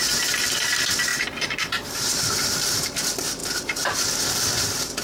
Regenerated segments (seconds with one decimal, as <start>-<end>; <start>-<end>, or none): 1.1-2.9